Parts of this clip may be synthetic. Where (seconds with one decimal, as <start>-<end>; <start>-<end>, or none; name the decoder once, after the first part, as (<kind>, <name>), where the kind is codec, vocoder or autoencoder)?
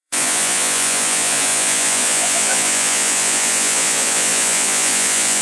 0.0-5.4 (vocoder, Vocos)